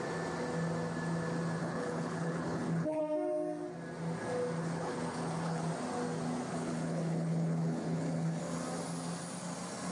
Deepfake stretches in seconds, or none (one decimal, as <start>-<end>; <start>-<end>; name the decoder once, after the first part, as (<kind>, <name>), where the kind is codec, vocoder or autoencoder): 1.6-3.0 (codec, HILCodec); 4.6-5.7; 6.5-8.4